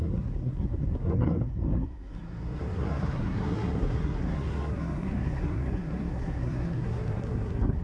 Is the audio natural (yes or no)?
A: no